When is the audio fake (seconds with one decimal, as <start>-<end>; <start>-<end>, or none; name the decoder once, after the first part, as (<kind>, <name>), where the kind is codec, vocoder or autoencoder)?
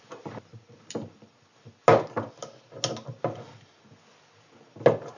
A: none